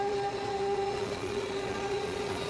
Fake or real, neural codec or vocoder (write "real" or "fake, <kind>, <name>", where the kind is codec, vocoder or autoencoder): fake, vocoder, Vocos